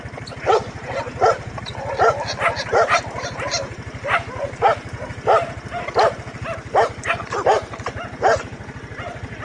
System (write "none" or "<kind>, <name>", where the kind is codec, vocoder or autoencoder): none